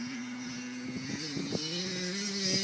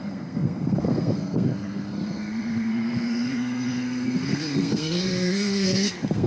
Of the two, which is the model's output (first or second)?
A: second